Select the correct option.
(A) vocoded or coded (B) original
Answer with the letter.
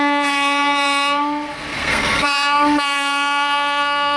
A